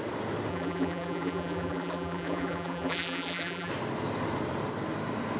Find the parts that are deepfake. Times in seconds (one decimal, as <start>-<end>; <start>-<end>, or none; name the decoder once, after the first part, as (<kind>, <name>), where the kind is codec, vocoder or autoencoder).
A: 0.5-3.7 (vocoder, BigVGAN v2)